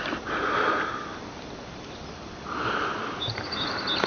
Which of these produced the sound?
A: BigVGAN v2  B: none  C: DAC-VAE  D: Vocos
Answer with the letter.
B